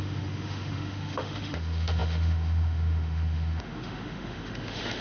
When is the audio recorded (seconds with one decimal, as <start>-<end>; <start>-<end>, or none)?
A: none

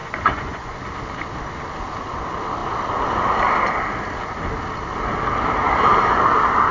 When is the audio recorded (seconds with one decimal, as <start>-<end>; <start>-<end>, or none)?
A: 0.8-6.7

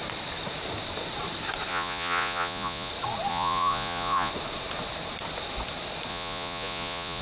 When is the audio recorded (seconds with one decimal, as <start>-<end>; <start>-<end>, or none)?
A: 0.0-1.7; 2.9-3.3; 4.3-6.1

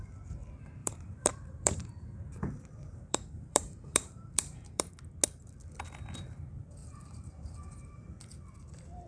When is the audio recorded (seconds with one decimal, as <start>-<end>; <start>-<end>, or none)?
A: 0.0-0.8; 4.9-6.8; 8.1-9.1

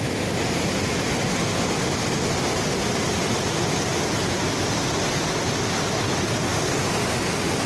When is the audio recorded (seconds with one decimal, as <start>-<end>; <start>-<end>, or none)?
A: 0.0-7.7

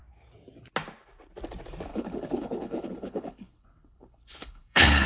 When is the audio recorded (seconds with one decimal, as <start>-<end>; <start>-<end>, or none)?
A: 0.0-1.9

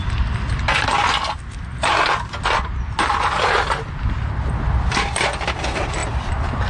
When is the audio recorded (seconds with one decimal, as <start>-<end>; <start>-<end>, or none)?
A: 0.0-6.7